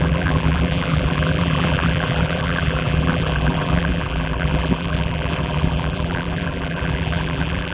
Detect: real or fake fake